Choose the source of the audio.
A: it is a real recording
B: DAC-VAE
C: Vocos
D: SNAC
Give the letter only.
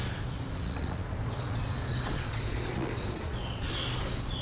C